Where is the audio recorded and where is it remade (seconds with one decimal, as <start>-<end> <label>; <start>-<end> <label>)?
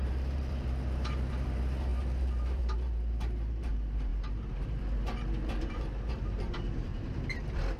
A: 0.0-6.9 remade; 6.9-7.8 recorded